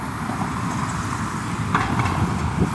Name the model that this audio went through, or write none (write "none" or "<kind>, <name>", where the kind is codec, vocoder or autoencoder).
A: none